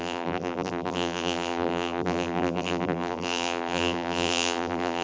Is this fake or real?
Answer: fake